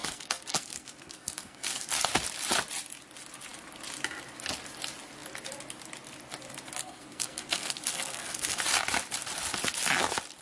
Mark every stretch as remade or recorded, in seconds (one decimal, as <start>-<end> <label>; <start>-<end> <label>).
0.0-1.9 remade; 1.9-6.8 recorded; 6.8-8.6 remade; 8.6-10.4 recorded